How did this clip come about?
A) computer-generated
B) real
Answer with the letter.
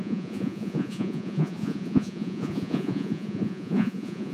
A